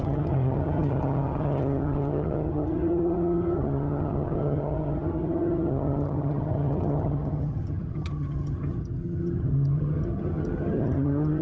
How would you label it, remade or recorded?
remade